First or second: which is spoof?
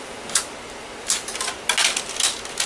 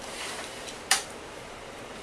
second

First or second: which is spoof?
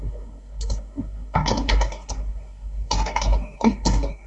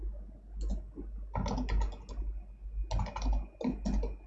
first